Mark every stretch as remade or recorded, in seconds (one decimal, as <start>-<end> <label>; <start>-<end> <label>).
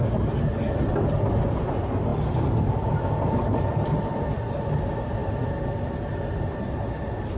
0.0-2.1 recorded; 2.1-4.5 remade; 4.5-5.2 recorded; 5.2-6.0 remade; 6.0-7.4 recorded